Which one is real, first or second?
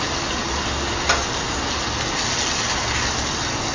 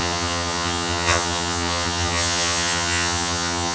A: first